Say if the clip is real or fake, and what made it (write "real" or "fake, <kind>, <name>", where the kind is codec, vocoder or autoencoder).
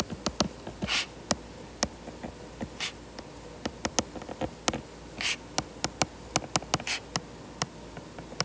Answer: real